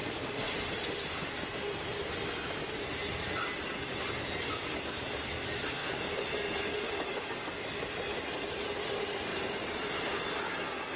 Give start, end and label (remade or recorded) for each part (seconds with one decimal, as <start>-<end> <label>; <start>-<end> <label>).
0.0-5.8 recorded; 5.8-7.2 remade; 7.2-9.3 recorded; 9.3-10.2 remade; 10.2-11.0 recorded